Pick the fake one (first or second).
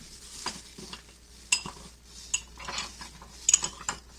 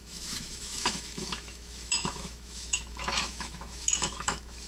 second